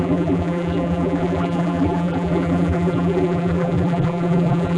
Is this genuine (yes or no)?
no